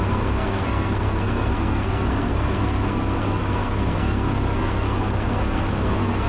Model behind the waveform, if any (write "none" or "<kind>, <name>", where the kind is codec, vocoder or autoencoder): codec, SNAC